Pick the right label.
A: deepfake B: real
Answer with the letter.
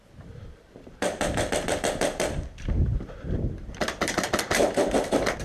A